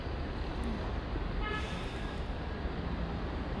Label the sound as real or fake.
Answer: real